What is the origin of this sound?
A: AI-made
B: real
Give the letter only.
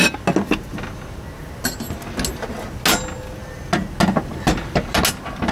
B